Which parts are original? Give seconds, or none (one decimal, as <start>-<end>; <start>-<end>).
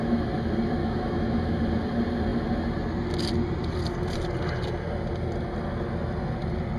0.0-0.8; 1.6-6.8